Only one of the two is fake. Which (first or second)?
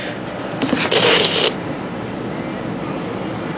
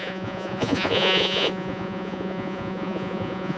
second